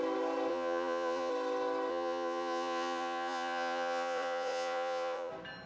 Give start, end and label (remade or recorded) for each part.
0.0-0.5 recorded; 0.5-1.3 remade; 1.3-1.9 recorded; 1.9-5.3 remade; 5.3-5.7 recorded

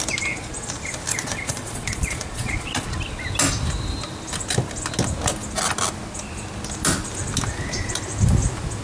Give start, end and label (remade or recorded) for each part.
0.0-1.1 recorded; 1.1-3.0 remade; 3.0-8.8 recorded

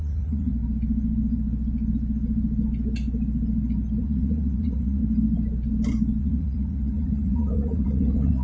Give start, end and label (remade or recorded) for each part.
0.0-0.5 remade; 0.5-4.0 recorded; 4.0-5.0 remade; 5.0-6.2 recorded; 6.2-8.4 remade

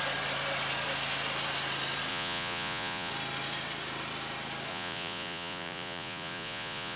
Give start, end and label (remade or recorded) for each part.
0.0-2.1 recorded; 2.1-3.1 remade; 3.1-4.7 recorded; 4.7-7.0 remade

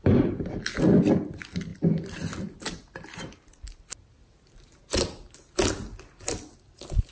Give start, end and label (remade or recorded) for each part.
0.0-7.1 recorded

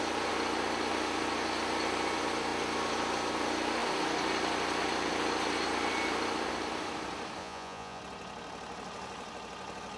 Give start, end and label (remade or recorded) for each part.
0.0-7.4 recorded; 7.4-8.0 remade; 8.0-10.0 recorded

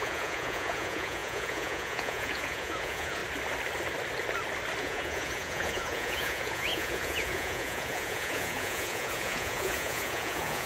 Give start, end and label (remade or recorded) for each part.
0.0-3.2 remade; 3.2-4.8 recorded; 4.8-10.7 remade

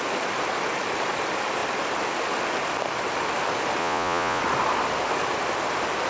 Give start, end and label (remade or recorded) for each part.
0.0-3.8 recorded; 3.8-4.4 remade; 4.4-6.1 recorded